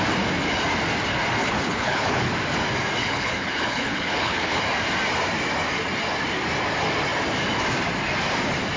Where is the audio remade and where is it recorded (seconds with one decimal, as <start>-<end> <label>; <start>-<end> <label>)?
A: 0.0-1.4 recorded; 1.4-2.3 remade; 2.3-3.0 recorded; 3.0-4.6 remade; 4.6-8.8 recorded